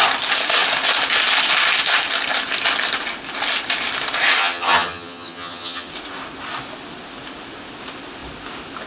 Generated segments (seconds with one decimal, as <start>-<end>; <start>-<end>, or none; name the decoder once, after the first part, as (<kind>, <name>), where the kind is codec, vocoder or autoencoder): 4.4-5.9 (vocoder, HiFi-GAN)